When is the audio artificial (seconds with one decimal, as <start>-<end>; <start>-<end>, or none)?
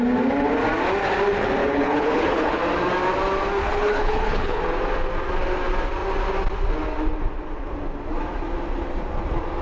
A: 1.6-2.6; 3.6-4.6